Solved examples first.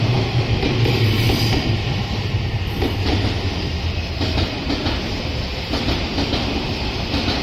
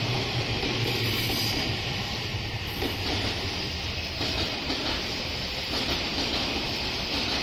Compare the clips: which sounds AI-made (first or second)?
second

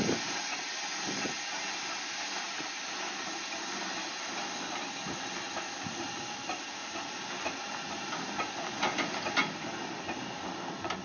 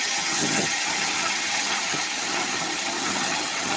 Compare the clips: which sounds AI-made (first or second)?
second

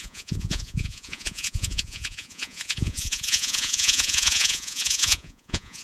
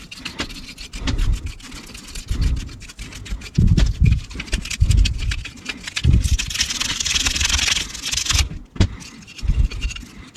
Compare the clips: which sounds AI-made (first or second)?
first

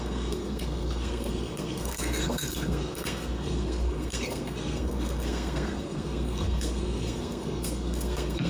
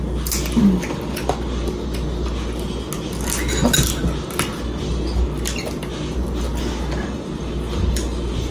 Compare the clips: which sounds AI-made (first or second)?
first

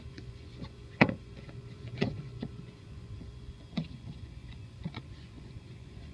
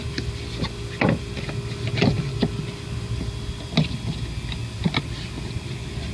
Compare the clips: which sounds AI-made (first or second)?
first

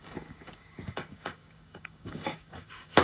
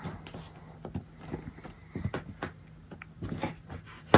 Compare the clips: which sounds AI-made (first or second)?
first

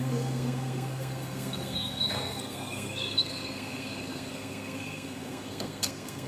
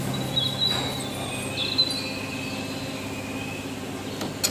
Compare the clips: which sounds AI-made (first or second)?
first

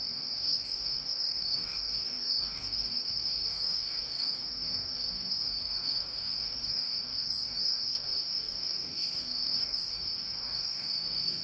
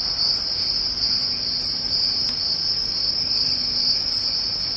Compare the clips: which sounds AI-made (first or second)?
first